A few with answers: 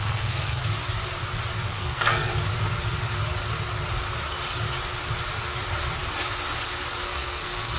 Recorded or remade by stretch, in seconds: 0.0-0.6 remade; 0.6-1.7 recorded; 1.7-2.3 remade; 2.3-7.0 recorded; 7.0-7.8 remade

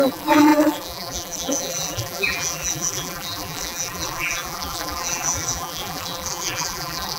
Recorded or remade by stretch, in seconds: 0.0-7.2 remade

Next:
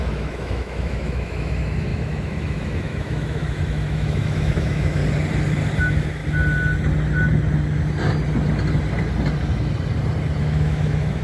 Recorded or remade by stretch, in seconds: 0.0-5.0 remade; 5.0-5.8 recorded; 5.8-6.2 remade; 6.2-10.4 recorded; 10.4-11.2 remade

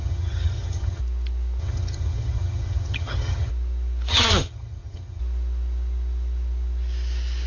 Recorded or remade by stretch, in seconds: 0.0-1.0 remade; 1.0-1.6 recorded; 1.6-3.5 remade; 3.5-4.1 recorded; 4.1-5.2 remade; 5.2-7.5 recorded

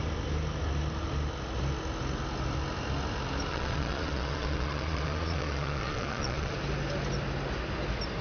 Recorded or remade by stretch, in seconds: 0.0-3.5 recorded; 3.5-6.5 remade; 6.5-8.2 recorded